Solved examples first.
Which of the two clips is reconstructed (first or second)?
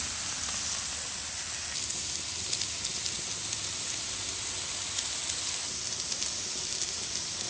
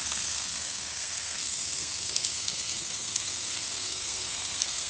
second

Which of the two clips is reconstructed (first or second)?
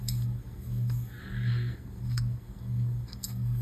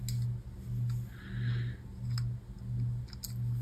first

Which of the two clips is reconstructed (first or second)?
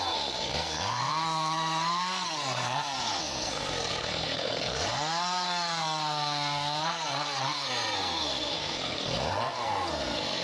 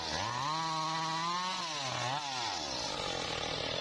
first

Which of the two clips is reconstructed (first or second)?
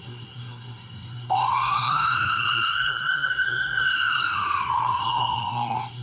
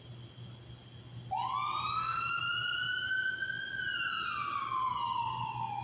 first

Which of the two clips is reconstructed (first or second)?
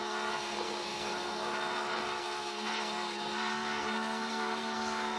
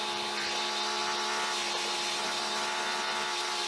first